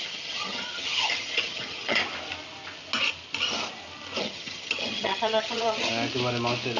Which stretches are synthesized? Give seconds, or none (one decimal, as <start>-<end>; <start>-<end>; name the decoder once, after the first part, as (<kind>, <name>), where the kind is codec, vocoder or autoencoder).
0.0-2.0 (vocoder, HiFi-GAN); 4.2-5.9